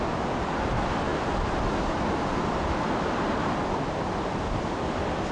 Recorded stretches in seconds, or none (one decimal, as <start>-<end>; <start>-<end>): 0.0-5.3